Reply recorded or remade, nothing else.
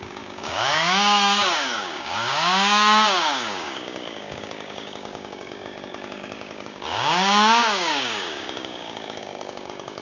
remade